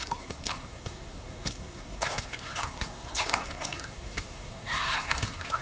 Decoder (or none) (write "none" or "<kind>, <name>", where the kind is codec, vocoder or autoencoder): codec, SNAC